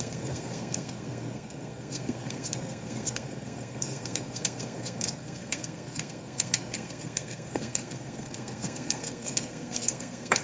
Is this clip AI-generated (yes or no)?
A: yes